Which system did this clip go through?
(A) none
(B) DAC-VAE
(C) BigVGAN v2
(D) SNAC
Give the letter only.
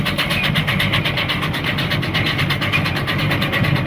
A